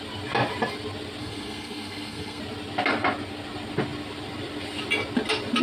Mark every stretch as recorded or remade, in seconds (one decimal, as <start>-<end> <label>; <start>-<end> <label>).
0.0-1.2 recorded; 1.2-2.4 remade; 2.4-5.6 recorded